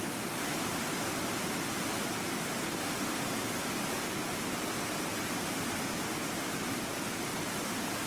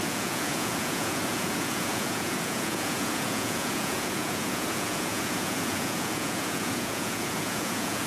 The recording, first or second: first